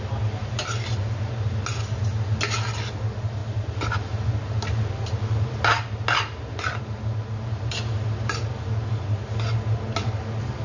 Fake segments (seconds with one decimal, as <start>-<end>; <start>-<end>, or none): none